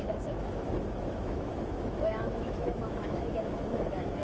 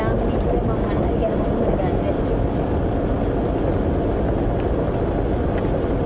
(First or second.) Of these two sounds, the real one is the second